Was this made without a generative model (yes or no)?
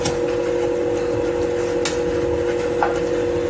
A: yes